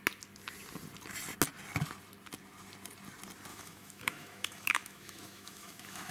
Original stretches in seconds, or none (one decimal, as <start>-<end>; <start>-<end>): 0.0-3.5